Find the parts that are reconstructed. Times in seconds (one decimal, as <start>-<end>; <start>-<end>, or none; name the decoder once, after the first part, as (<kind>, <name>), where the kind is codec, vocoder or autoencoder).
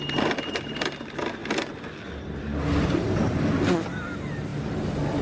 none